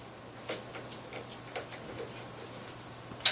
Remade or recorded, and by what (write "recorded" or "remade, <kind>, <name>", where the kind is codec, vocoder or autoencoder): recorded